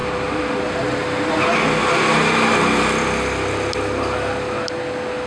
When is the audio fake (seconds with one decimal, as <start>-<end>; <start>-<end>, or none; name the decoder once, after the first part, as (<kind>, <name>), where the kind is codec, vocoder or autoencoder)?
none